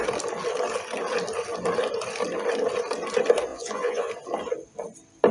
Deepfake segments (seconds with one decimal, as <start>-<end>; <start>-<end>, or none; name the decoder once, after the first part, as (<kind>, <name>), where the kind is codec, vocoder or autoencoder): 3.5-4.1 (vocoder, Vocos)